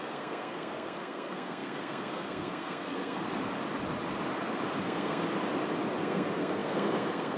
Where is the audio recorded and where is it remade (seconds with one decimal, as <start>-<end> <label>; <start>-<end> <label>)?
0.0-3.3 remade; 3.3-4.8 recorded; 4.8-5.2 remade; 5.2-6.0 recorded; 6.0-7.4 remade